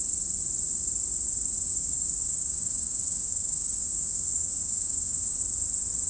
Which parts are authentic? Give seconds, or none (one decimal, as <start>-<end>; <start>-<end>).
0.0-1.7; 5.4-6.1